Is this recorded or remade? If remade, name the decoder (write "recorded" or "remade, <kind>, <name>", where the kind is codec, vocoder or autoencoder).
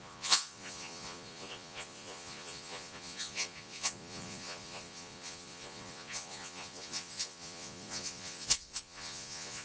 remade, vocoder, Vocos